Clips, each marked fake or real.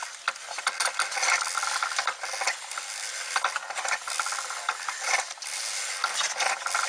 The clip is real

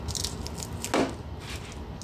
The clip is real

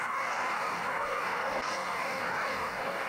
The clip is fake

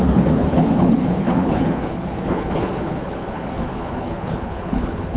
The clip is fake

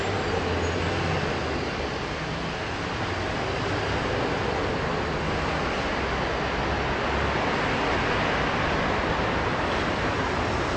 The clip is real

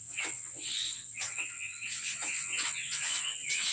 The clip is fake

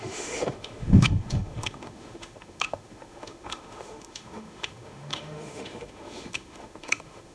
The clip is fake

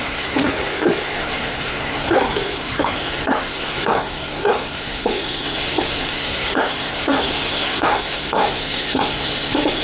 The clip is fake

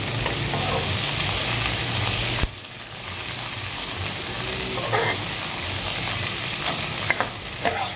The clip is real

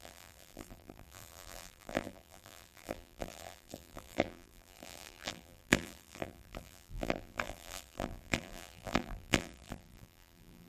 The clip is fake